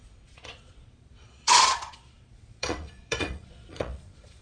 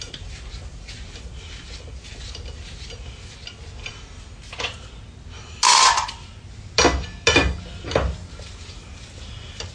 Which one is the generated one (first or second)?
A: first